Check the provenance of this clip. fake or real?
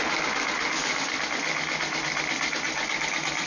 real